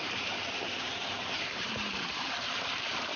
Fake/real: fake